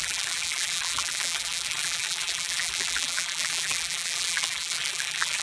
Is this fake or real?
fake